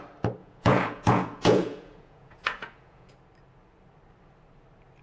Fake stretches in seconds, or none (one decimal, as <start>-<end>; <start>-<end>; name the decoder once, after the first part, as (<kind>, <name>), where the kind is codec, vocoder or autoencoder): 0.4-3.1 (vocoder, Vocos)